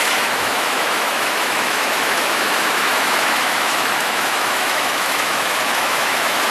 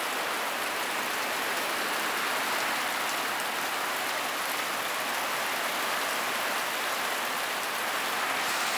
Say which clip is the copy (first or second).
first